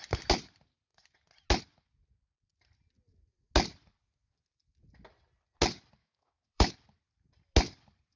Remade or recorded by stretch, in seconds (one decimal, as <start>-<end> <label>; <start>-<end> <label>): 0.0-6.0 recorded; 6.0-6.7 remade; 6.7-8.2 recorded